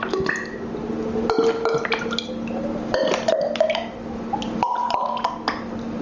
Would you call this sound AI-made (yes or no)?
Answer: no